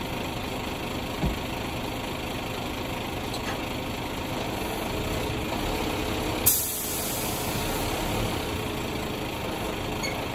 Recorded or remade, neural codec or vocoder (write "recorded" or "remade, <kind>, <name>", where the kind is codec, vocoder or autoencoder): recorded